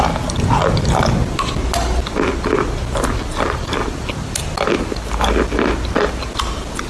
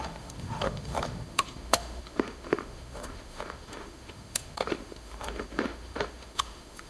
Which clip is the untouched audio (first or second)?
first